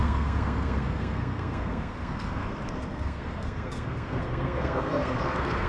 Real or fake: fake